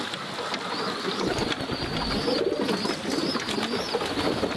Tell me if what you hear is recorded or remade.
recorded